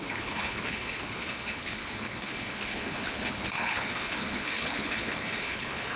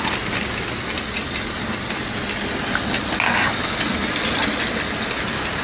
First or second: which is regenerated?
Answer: first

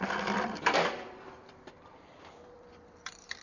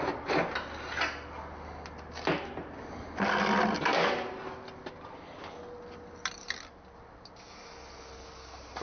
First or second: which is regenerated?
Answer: first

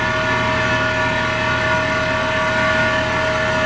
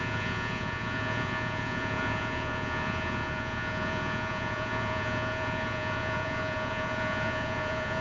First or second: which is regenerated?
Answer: second